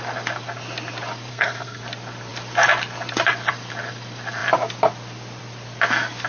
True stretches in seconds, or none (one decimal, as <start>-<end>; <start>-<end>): 0.0-1.3; 1.8-6.3